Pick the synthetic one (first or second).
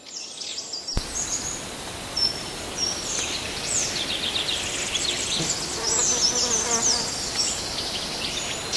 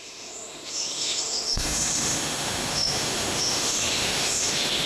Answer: second